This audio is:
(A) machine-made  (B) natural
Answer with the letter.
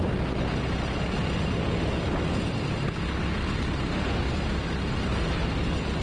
B